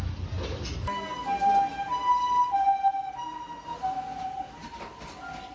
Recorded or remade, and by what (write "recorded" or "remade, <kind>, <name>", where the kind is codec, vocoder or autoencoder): recorded